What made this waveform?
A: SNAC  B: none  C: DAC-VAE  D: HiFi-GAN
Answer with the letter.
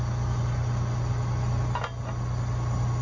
B